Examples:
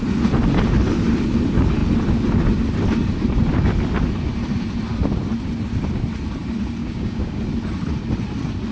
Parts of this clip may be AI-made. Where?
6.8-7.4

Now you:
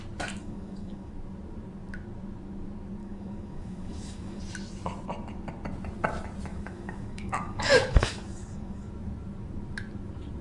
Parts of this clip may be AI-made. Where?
0.4-1.1; 3.0-4.4; 6.5-8.9

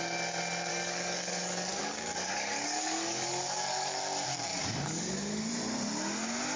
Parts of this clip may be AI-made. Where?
0.7-4.0; 4.5-5.5

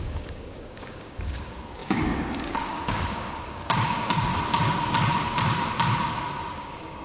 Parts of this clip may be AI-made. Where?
0.0-4.3; 6.6-7.0

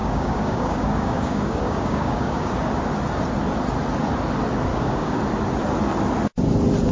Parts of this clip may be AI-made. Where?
0.0-2.5; 4.7-5.2

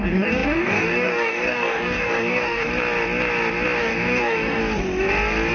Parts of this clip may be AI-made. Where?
0.0-2.7; 3.8-4.6

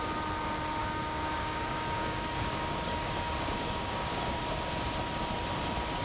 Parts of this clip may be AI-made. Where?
0.8-4.4